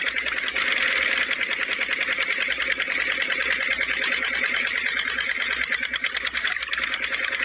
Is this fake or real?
real